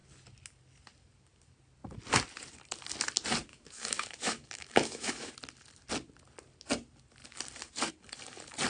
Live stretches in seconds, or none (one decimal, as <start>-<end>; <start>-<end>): 0.0-3.5; 5.3-8.7